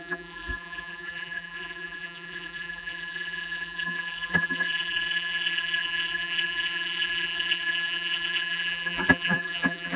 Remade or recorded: remade